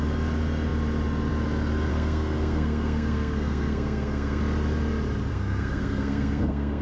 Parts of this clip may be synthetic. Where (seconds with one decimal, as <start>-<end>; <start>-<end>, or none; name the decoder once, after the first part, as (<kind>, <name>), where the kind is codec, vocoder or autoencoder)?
1.9-4.4 (codec, SNAC); 5.3-6.8